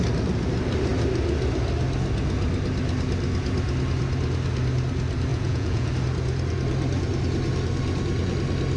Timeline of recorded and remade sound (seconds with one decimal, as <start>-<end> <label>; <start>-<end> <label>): 0.0-5.3 recorded; 5.3-5.9 remade; 5.9-8.8 recorded